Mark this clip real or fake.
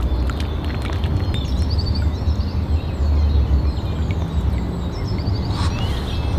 real